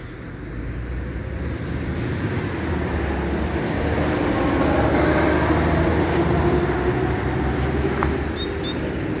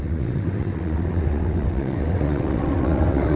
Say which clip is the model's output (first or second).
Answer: second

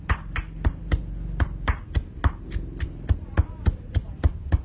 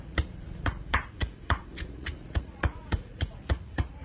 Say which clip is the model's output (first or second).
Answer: second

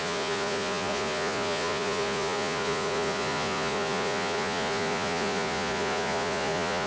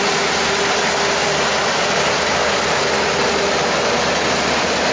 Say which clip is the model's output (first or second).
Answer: first